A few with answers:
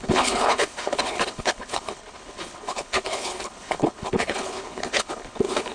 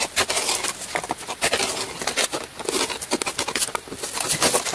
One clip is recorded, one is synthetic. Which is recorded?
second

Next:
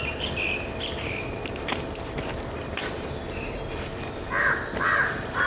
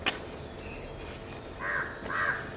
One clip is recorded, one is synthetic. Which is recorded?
second